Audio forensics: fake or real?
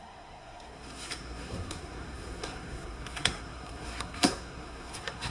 fake